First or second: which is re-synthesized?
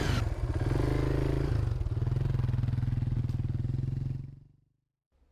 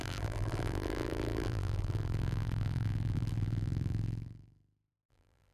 second